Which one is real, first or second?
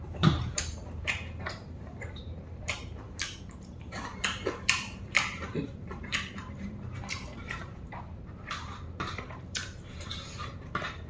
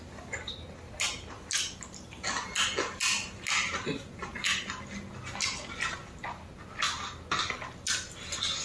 second